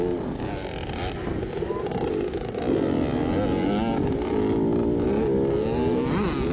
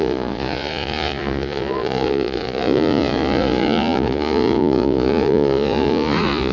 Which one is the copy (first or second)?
second